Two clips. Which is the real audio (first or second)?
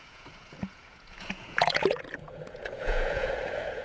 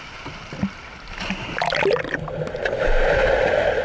second